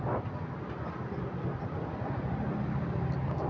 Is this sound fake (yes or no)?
no